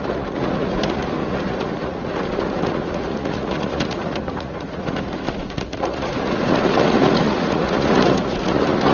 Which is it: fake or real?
fake